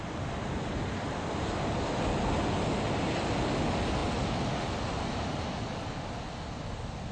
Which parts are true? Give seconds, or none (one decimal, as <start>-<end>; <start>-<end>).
0.0-7.1